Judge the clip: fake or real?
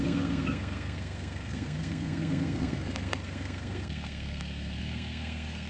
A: fake